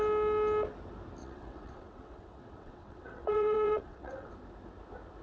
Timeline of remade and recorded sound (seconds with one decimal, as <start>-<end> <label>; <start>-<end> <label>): 0.0-1.2 recorded; 1.2-4.3 remade; 4.3-5.2 recorded

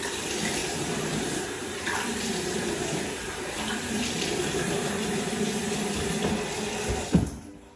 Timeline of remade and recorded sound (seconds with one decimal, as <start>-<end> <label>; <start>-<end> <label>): 0.0-5.6 remade; 5.6-7.8 recorded

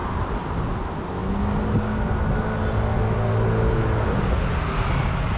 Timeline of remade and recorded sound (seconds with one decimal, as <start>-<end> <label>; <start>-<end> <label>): 0.0-0.7 remade; 0.7-5.4 recorded

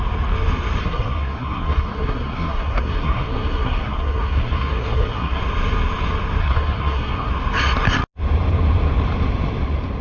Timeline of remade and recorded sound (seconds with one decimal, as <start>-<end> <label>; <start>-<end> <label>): 0.0-0.8 recorded; 0.8-5.4 remade; 5.4-6.4 recorded; 6.4-7.3 remade; 7.3-10.0 recorded

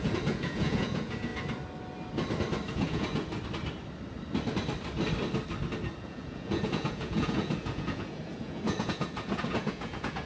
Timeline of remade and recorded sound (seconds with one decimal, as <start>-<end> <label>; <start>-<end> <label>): 0.0-1.3 remade; 1.3-2.7 recorded; 2.7-3.3 remade; 3.3-6.0 recorded; 6.0-10.3 remade

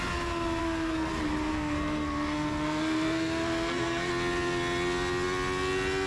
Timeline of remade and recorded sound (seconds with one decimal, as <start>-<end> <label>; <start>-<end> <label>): 0.0-0.6 recorded; 0.6-1.1 remade; 1.1-1.5 recorded; 1.5-4.1 remade; 4.1-6.1 recorded

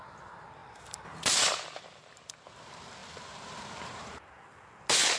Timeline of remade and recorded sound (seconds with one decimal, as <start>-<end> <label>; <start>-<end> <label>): 0.0-0.6 recorded; 0.6-2.3 remade; 2.3-3.0 recorded; 3.0-4.3 remade; 4.3-5.2 recorded

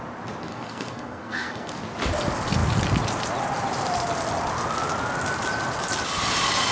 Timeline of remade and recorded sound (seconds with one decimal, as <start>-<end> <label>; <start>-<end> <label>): 0.0-0.5 recorded; 0.5-1.7 remade; 1.7-6.7 recorded